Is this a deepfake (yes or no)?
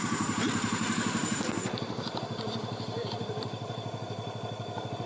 yes